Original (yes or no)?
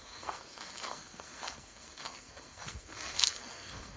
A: no